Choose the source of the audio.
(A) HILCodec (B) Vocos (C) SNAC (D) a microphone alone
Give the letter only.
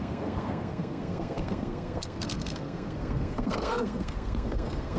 C